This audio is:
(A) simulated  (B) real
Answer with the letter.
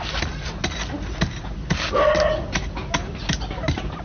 B